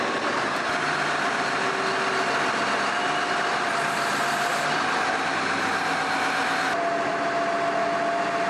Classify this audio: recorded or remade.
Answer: recorded